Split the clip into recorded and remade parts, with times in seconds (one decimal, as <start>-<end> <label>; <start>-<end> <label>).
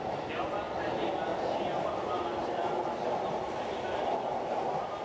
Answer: 0.0-5.0 recorded